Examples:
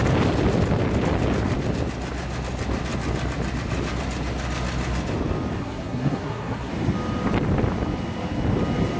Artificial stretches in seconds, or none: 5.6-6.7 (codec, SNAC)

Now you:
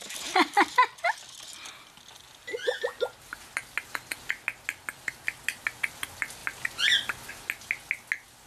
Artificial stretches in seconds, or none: none

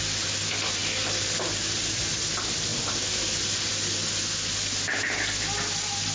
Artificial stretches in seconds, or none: none

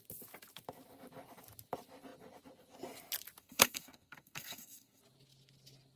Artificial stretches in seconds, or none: 3.4-5.0 (codec, SNAC)

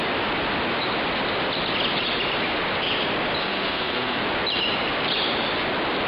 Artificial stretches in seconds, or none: 3.4-4.2 (codec, SNAC)

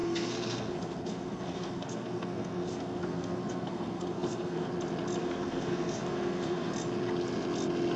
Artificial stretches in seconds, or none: 0.0-4.7 (codec, SNAC); 5.2-6.7

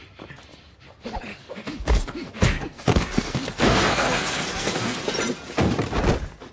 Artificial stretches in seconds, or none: 1.3-5.0 (codec, SNAC)

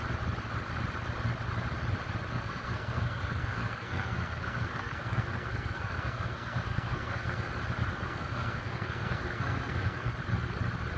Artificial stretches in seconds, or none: 2.3-7.5 (codec, SNAC); 7.9-10.1